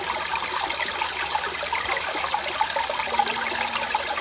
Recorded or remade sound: recorded